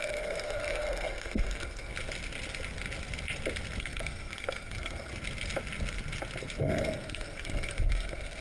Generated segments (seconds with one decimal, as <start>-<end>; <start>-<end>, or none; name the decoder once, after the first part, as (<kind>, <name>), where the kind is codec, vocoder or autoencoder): 0.0-1.9 (codec, SNAC); 3.8-5.1; 6.6-8.4